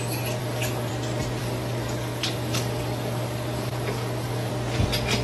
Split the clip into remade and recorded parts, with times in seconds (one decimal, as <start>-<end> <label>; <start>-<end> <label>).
0.0-0.4 recorded; 0.4-0.9 remade; 0.9-1.4 recorded; 1.4-4.5 remade; 4.5-5.2 recorded